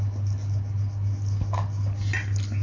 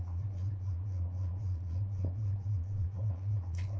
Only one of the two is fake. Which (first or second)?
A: second